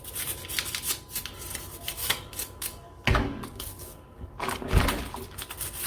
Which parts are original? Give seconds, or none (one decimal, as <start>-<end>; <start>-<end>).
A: 0.0-2.0; 4.8-5.9